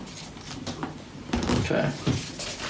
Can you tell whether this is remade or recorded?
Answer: recorded